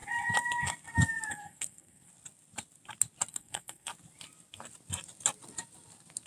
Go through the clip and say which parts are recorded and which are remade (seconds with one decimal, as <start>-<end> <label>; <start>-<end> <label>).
0.0-1.3 recorded; 1.3-2.1 remade; 2.1-3.3 recorded; 3.3-3.9 remade; 3.9-6.3 recorded